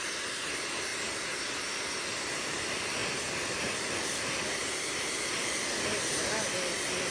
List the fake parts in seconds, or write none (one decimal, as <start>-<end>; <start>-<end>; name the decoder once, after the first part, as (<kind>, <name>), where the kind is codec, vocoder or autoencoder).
none